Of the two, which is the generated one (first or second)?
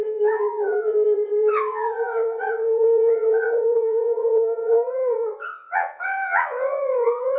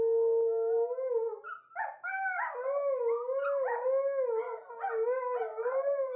first